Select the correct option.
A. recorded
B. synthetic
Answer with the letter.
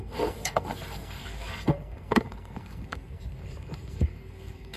B